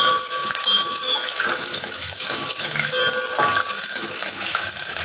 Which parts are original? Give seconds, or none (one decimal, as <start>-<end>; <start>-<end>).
3.0-3.7